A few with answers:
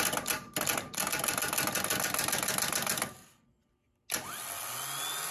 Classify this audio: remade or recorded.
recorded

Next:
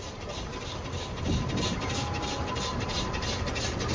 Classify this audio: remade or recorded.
recorded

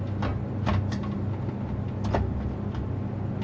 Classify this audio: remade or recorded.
recorded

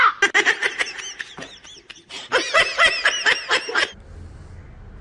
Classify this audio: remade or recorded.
recorded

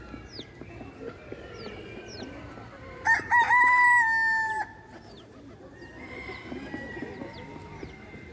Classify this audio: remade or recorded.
recorded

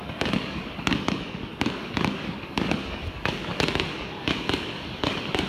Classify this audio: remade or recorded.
remade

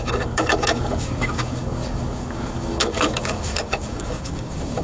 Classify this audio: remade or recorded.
remade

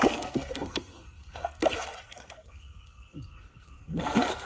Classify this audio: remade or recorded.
remade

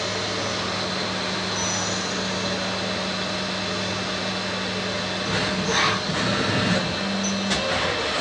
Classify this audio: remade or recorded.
recorded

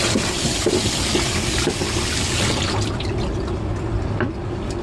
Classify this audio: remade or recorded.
recorded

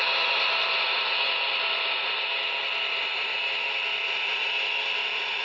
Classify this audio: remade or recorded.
recorded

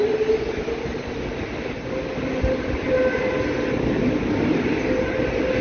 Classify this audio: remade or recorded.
recorded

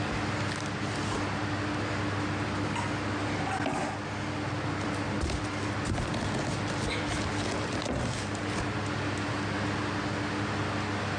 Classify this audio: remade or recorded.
recorded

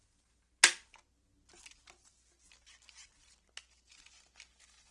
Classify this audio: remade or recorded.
recorded